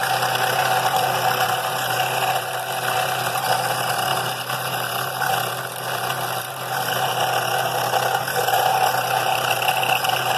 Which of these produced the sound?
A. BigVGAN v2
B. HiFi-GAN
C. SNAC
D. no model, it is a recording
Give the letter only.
D